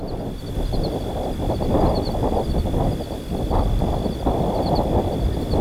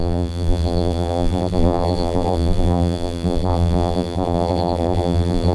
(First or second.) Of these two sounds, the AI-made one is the second